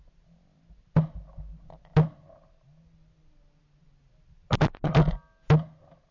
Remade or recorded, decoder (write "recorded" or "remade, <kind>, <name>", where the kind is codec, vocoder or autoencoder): recorded